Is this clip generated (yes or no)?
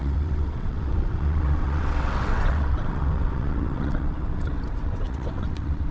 yes